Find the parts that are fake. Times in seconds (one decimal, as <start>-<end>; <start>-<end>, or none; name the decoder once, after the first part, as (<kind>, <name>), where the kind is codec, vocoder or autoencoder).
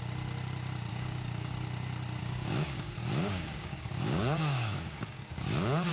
0.9-1.5 (codec, DAC); 2.2-5.9